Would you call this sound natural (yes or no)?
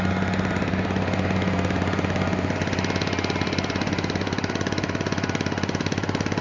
yes